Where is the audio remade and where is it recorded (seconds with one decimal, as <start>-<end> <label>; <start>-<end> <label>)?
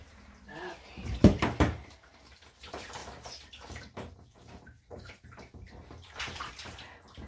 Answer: 0.0-7.3 remade